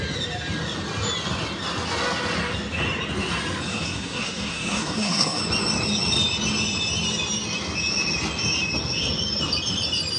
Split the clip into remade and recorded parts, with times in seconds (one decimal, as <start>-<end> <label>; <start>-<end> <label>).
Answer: 0.0-3.7 recorded; 3.7-5.4 remade; 5.4-10.2 recorded